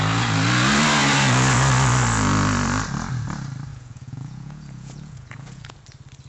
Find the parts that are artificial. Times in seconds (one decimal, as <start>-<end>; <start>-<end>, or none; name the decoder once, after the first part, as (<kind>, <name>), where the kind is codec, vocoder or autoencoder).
3.7-5.8 (vocoder, Vocos)